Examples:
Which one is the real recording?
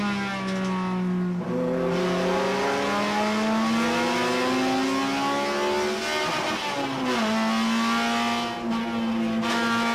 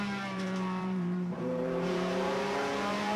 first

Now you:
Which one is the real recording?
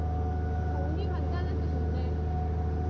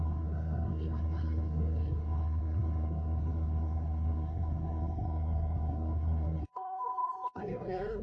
first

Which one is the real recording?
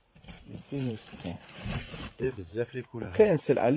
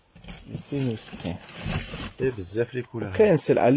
second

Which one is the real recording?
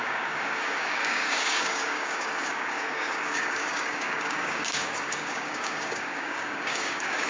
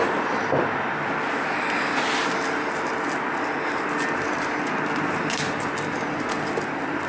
second